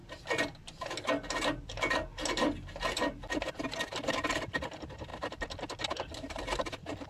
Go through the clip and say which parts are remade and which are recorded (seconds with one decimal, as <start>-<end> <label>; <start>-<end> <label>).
0.0-7.1 recorded